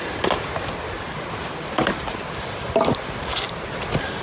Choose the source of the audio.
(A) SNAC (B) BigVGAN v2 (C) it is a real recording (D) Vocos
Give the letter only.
C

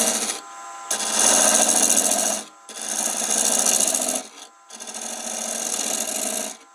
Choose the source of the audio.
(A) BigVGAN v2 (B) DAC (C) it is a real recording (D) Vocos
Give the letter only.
C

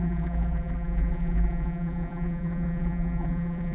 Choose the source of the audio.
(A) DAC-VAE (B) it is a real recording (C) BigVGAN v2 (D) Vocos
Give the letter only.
C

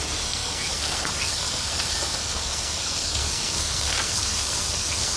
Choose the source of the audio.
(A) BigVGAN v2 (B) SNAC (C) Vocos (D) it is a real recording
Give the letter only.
B